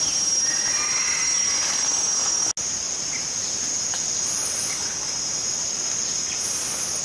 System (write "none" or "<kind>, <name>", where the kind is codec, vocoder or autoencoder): none